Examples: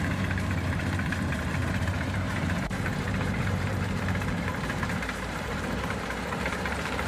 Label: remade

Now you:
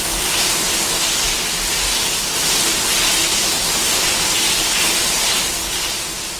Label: recorded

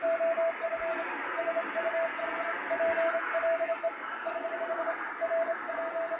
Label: recorded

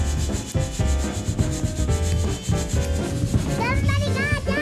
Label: recorded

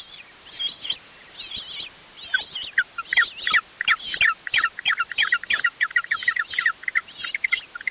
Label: recorded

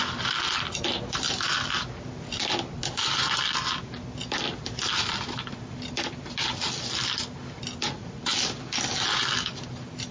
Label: recorded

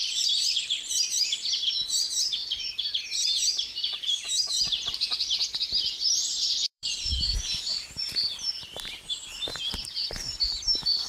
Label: remade